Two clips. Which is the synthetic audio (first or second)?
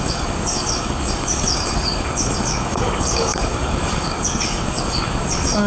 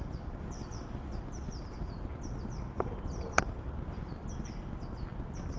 first